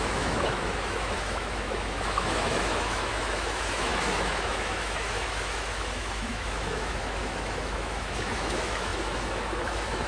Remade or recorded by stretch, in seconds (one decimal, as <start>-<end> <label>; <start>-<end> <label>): 0.0-10.1 remade